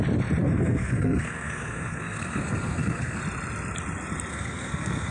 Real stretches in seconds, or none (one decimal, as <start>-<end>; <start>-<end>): 0.0-0.4; 3.2-4.3